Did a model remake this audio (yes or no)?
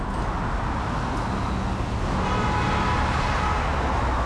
no